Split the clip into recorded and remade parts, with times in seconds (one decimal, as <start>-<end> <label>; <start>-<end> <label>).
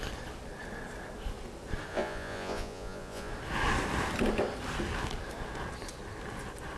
0.0-1.9 recorded; 1.9-3.3 remade; 3.3-6.8 recorded